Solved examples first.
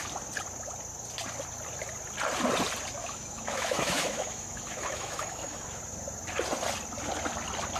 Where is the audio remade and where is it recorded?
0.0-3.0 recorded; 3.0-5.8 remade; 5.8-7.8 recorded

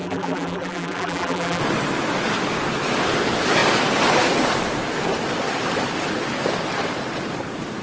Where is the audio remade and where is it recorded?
0.0-1.6 remade; 1.6-7.8 recorded

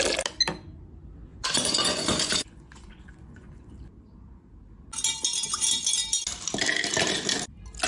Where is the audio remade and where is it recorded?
0.0-1.3 recorded; 1.3-3.7 remade; 3.7-7.9 recorded